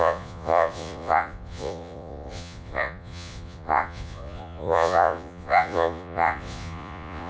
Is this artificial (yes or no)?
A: yes